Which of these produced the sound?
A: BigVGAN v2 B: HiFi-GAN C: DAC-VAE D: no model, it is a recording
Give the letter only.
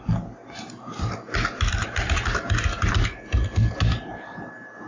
D